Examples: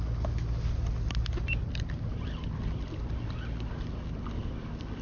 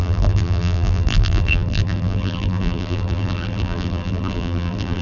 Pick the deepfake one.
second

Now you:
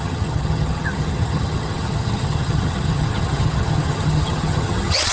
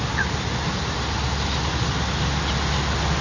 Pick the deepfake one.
first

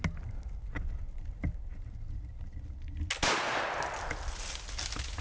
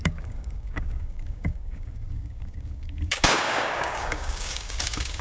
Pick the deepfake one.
second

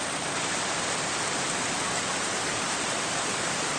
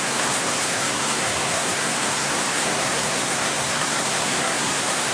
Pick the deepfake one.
second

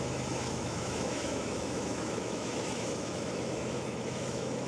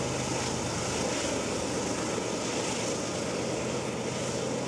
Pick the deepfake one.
first